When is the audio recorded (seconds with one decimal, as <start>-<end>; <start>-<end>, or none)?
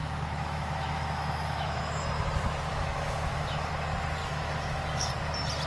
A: 1.8-2.7; 3.7-4.2; 5.1-5.7